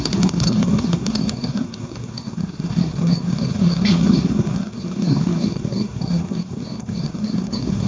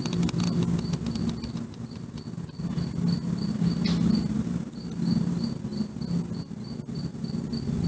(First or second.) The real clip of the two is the second